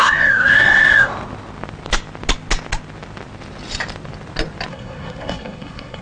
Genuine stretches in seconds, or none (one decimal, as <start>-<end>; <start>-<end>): 1.1-4.7